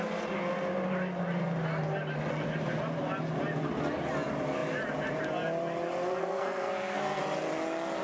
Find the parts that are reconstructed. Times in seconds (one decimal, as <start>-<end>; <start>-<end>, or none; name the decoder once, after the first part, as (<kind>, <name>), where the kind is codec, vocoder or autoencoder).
6.2-7.2 (codec, SNAC)